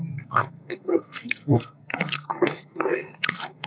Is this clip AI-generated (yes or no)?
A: yes